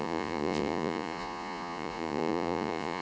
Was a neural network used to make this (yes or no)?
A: yes